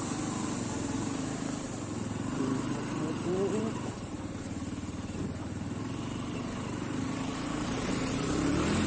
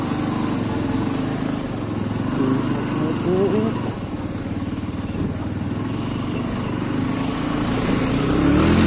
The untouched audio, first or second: second